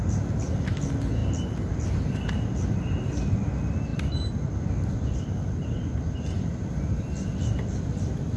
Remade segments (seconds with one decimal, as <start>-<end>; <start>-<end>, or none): none